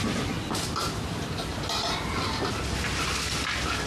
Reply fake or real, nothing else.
real